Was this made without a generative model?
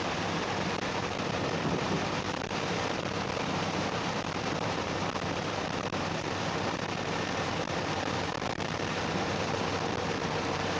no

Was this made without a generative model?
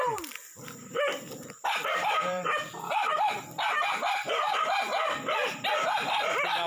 no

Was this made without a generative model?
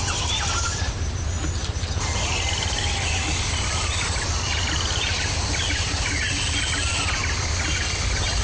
yes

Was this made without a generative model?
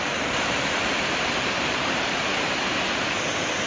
no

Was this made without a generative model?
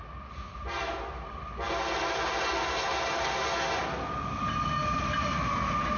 yes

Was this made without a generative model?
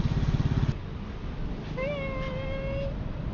yes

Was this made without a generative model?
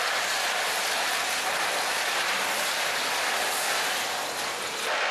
yes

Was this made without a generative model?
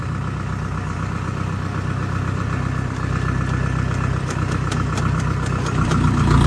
no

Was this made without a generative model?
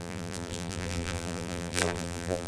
no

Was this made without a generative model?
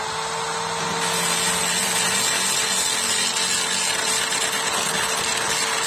yes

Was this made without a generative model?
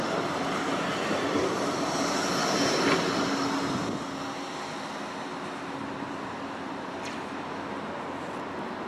yes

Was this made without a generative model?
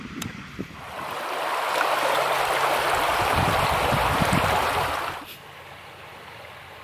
yes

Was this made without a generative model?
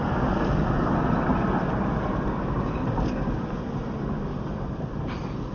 yes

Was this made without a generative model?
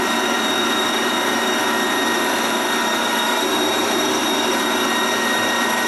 no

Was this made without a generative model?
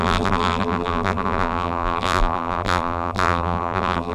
no